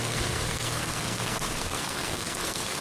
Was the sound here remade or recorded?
remade